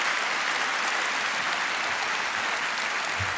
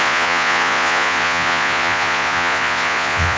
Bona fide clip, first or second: first